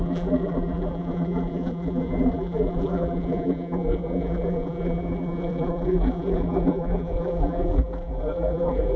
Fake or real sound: fake